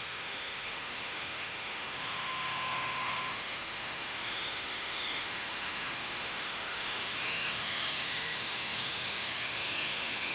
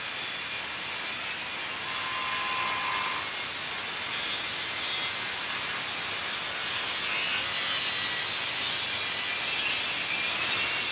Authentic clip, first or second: second